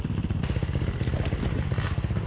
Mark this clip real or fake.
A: real